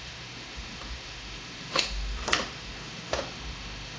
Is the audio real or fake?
fake